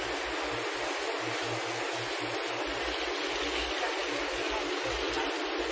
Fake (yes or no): no